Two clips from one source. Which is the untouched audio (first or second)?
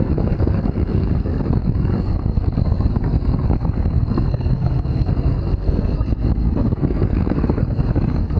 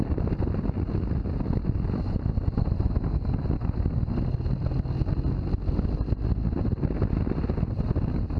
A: second